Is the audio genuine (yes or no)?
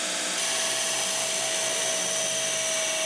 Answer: yes